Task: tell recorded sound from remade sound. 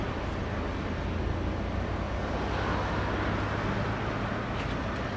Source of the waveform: recorded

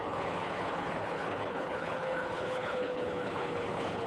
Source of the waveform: remade